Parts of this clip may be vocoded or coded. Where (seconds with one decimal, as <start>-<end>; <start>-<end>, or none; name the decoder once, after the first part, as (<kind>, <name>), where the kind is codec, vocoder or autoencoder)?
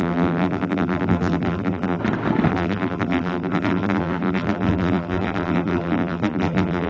0.0-2.0 (vocoder, BigVGAN v2); 2.5-6.9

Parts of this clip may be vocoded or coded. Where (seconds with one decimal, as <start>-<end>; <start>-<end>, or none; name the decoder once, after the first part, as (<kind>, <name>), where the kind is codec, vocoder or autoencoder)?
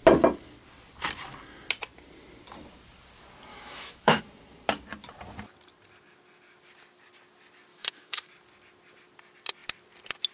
3.5-4.2 (autoencoder, DAC-VAE); 7.7-8.3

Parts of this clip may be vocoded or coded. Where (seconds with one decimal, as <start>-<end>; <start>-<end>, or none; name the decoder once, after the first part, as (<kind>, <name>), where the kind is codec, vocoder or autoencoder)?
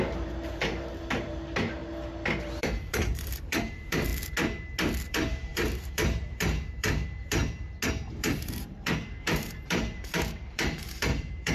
0.0-1.8 (vocoder, BigVGAN v2); 2.6-4.1; 5.1-7.4; 8.1-11.5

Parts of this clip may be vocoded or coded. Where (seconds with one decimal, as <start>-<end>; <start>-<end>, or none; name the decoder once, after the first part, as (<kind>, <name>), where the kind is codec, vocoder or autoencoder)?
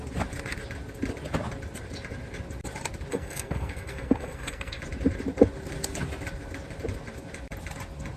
3.1-4.8 (codec, SNAC)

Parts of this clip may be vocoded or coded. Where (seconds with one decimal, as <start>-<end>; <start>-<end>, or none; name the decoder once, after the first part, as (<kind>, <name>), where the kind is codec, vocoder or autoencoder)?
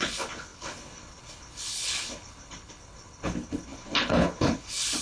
0.0-5.0 (codec, HILCodec)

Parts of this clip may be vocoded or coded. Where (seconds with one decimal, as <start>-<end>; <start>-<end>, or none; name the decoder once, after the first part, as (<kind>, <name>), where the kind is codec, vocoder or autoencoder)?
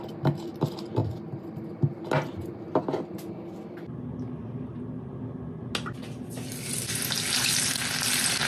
none